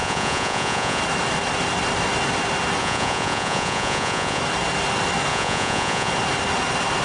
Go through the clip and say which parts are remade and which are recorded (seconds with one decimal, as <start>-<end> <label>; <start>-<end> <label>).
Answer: 0.0-1.0 remade; 1.0-2.8 recorded; 2.8-4.4 remade; 4.4-5.3 recorded; 5.3-6.1 remade; 6.1-7.0 recorded